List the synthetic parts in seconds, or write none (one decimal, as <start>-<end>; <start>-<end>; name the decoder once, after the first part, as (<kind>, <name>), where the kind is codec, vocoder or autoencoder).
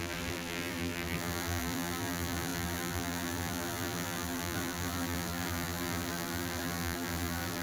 0.0-7.6 (vocoder, BigVGAN v2)